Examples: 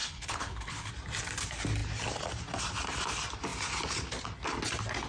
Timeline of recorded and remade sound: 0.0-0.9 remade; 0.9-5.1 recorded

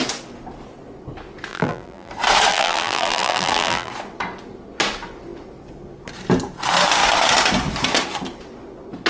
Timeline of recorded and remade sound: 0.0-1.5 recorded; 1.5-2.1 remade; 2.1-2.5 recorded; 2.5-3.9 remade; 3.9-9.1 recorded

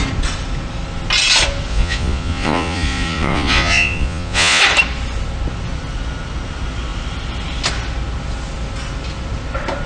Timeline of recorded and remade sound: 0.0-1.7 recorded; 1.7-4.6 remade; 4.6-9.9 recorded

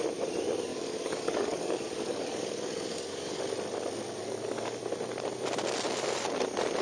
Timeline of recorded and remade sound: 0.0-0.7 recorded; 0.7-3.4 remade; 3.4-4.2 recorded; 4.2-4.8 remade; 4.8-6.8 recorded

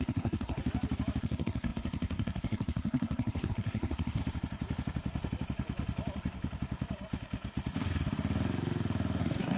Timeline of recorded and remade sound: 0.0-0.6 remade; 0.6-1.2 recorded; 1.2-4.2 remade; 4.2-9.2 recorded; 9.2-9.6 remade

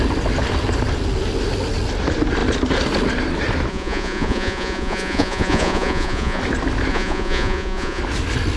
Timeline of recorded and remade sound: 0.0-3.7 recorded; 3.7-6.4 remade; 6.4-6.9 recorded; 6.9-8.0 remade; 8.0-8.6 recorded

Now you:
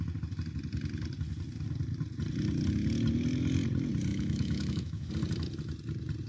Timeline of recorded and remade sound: 0.0-4.1 recorded; 4.1-5.1 remade; 5.1-6.3 recorded

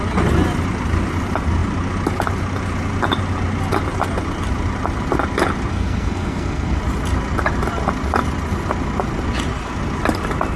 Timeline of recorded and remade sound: 0.0-5.7 recorded; 5.7-6.8 remade; 6.8-10.6 recorded